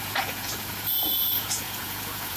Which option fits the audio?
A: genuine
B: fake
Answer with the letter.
B